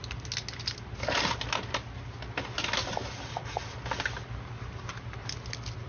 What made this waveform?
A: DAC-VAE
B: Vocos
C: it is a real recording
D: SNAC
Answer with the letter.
C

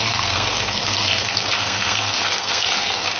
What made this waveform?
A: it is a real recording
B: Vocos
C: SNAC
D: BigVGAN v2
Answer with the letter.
C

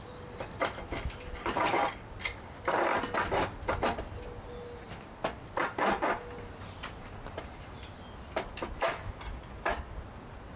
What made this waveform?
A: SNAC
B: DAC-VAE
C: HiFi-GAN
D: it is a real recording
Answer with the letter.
D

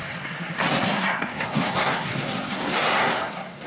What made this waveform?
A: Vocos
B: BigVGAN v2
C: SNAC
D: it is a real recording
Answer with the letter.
C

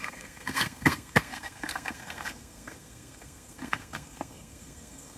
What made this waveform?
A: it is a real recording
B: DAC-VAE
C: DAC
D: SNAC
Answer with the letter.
D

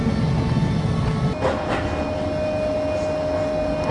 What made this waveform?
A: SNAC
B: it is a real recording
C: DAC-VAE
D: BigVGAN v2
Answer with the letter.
B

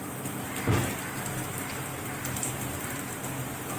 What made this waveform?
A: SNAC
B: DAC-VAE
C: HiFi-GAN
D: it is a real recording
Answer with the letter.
D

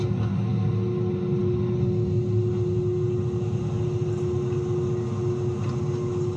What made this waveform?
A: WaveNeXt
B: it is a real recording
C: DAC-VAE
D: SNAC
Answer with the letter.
B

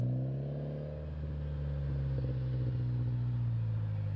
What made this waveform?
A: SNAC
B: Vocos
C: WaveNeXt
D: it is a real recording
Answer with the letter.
D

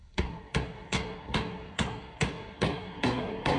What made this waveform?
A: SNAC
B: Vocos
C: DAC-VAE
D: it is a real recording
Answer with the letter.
A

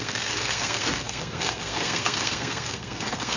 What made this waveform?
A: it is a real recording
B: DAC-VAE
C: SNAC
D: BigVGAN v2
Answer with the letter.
C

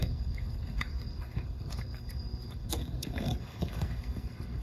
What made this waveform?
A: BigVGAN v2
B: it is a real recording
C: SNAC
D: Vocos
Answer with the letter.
C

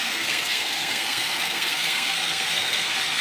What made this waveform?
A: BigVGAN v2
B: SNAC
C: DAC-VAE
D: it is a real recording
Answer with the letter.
B